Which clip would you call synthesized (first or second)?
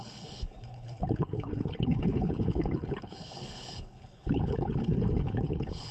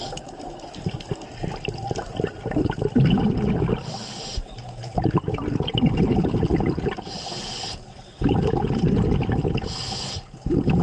first